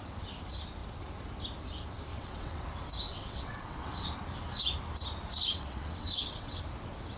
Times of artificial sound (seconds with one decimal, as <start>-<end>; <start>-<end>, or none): 2.1-2.6; 3.1-4.1; 5.4-6.6